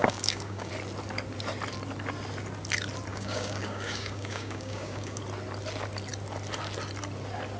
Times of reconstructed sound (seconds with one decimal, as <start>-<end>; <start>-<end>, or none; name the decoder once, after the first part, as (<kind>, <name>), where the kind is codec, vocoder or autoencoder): 0.0-0.7 (codec, DAC); 3.1-5.2